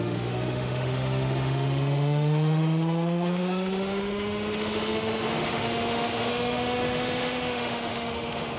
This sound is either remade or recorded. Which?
remade